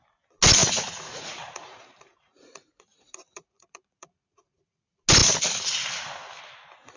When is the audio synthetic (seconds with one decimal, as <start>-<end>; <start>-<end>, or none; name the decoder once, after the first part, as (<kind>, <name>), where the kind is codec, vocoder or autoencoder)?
0.6-4.8 (vocoder, Vocos)